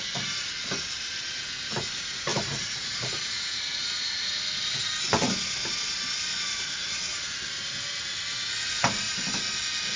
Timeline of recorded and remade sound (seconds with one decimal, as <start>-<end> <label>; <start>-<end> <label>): 0.0-2.3 recorded; 2.3-4.4 remade; 4.4-10.0 recorded